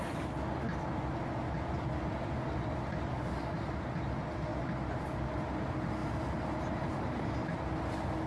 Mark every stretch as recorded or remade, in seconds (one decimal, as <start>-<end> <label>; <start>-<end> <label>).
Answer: 0.0-8.3 recorded